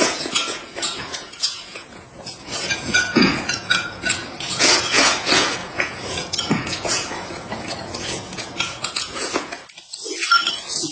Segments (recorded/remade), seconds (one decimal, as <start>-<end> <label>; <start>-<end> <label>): 0.0-9.6 remade; 9.6-10.5 recorded; 10.5-10.9 remade